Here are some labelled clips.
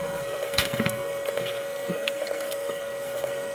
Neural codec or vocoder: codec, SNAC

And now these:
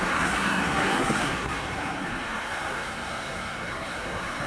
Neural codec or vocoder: codec, SNAC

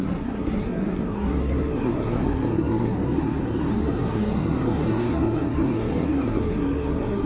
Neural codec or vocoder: codec, SNAC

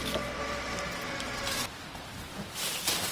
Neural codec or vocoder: none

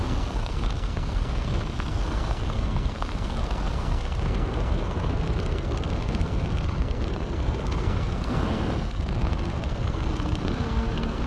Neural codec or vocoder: codec, SNAC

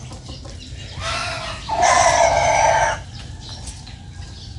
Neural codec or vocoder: none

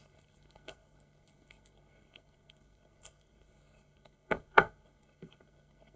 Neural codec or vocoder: codec, SNAC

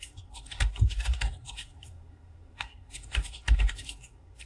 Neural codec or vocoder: codec, SNAC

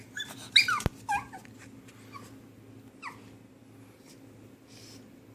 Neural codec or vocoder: none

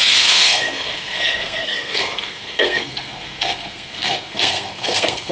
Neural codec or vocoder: codec, SNAC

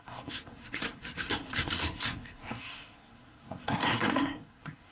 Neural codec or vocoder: codec, SNAC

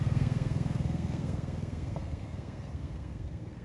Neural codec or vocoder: codec, SNAC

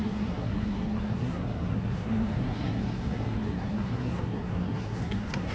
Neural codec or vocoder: codec, SNAC